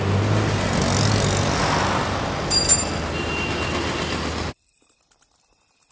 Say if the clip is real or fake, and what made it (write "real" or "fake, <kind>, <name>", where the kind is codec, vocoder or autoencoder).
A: real